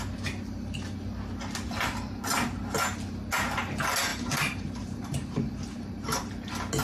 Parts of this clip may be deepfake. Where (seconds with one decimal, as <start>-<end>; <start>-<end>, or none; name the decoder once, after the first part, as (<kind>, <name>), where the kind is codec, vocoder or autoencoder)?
4.1-6.3 (vocoder, BigVGAN v2)